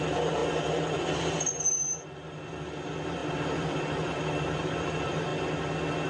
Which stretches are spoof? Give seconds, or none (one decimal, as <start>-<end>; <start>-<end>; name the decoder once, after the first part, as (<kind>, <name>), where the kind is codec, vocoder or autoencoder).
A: 0.0-0.4 (vocoder, BigVGAN v2); 0.9-5.3